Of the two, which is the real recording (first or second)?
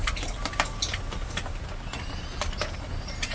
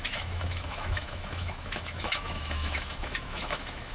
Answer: first